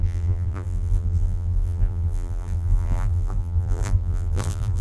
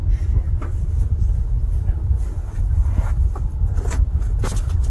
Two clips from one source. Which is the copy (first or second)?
first